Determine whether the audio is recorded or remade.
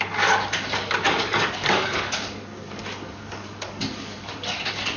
remade